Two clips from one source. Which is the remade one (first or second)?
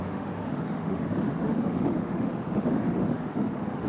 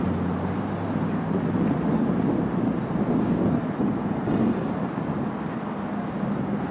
first